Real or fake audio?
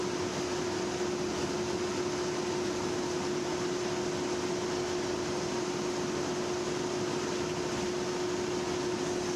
real